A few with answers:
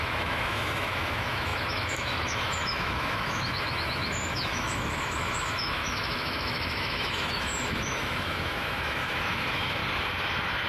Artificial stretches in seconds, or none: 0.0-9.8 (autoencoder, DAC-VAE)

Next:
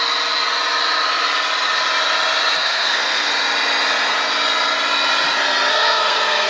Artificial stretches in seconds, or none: 2.6-3.3 (codec, SNAC); 5.7-6.5

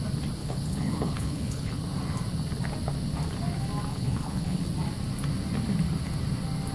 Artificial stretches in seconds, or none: 0.4-1.8 (codec, HILCodec); 3.9-4.6

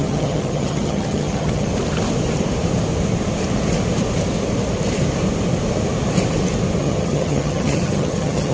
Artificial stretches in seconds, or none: 0.0-1.7 (vocoder, HiFi-GAN); 6.8-8.5

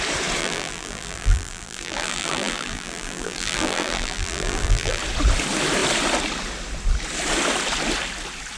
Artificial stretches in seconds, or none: 0.4-5.0 (vocoder, BigVGAN v2)

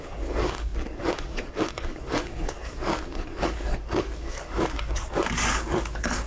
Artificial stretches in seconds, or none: 0.0-6.3 (codec, DAC)

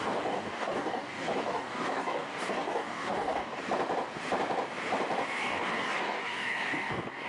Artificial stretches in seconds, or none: 0.0-3.6 (codec, DAC); 5.4-7.3

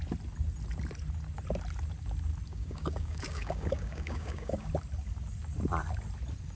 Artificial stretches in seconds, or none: 2.5-4.7 (codec, DAC)